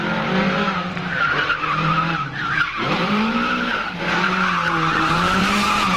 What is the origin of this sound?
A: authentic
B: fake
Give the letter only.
B